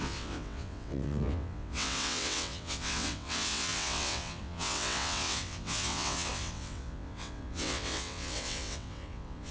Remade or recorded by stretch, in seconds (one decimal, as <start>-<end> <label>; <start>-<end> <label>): 0.0-9.5 remade